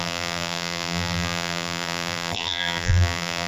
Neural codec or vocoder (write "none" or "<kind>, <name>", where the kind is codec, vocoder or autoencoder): vocoder, BigVGAN v2